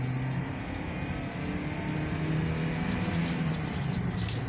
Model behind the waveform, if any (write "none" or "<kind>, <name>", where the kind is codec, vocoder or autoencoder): none